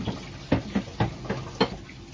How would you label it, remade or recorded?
recorded